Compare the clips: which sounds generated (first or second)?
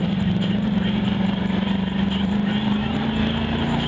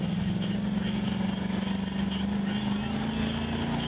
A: first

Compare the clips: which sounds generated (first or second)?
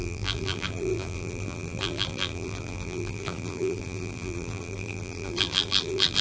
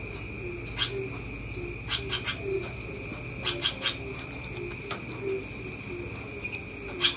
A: first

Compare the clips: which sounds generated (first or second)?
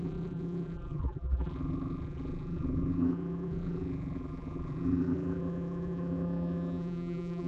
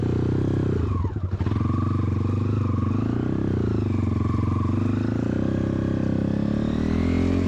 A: first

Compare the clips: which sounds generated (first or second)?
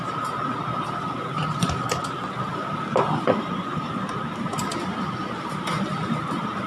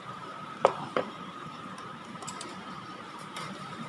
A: second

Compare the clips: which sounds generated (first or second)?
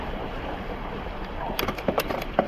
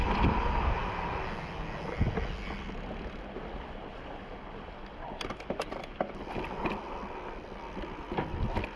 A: first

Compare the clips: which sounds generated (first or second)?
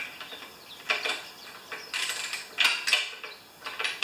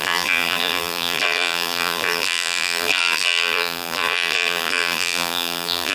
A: second